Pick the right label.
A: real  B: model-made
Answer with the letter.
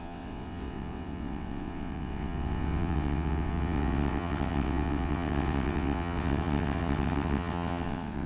B